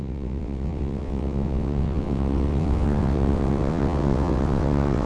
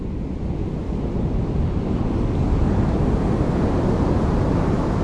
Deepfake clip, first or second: first